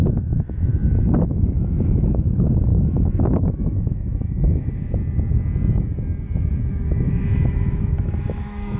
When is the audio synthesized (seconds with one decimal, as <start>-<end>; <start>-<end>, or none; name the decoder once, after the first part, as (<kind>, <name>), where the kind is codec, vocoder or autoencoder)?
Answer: 0.0-0.7 (autoencoder, DAC-VAE); 1.3-5.0; 6.7-8.8

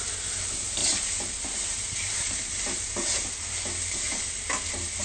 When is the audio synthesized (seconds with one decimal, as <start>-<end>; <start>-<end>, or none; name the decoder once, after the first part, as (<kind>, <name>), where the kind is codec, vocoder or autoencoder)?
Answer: 0.8-3.3 (vocoder, BigVGAN v2)

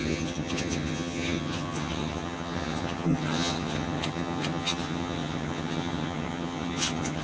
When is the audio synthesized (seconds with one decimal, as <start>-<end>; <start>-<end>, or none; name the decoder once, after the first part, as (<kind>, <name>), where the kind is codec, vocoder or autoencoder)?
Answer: 0.0-7.2 (vocoder, HiFi-GAN)

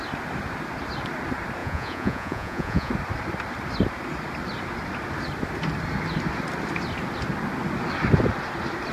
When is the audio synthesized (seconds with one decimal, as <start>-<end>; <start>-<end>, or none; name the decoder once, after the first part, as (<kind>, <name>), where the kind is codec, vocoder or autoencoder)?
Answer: 1.6-2.9 (vocoder, Vocos)

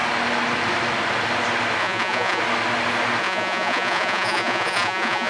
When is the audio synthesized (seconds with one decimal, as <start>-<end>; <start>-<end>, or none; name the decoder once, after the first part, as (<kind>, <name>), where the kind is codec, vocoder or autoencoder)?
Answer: 1.8-2.4 (vocoder, Vocos); 3.2-5.3